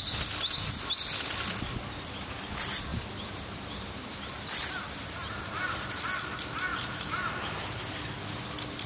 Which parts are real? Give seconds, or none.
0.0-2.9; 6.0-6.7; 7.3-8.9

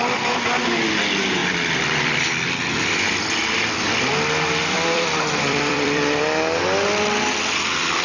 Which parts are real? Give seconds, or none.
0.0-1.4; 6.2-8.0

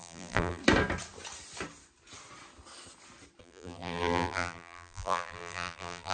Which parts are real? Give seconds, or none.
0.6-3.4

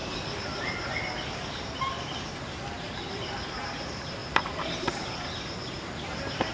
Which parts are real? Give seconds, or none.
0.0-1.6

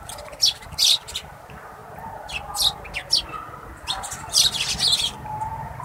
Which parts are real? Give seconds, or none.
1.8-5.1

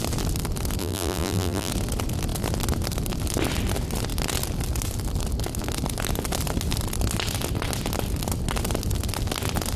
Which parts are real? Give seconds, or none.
0.0-0.8; 1.7-9.8